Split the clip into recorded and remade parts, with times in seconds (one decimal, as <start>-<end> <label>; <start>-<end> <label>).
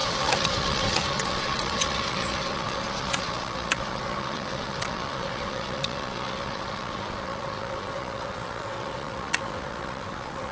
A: 0.0-10.5 remade